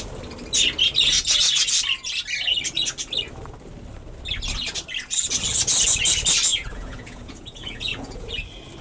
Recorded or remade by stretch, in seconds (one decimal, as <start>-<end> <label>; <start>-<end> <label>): 0.0-6.5 recorded; 6.5-8.3 remade; 8.3-8.8 recorded